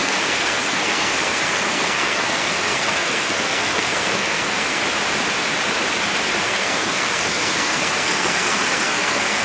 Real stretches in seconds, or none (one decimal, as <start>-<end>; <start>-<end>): 4.8-6.4